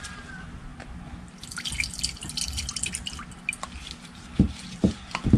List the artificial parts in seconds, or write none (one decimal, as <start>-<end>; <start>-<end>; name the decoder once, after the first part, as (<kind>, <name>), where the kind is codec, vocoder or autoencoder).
none